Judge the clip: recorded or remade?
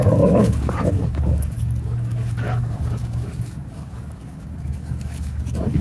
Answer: remade